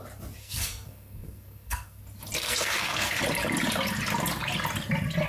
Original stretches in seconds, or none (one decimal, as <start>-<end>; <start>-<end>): 0.0-0.4; 2.0-2.4; 3.2-5.3